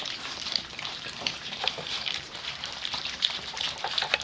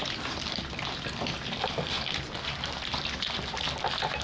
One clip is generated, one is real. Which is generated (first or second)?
first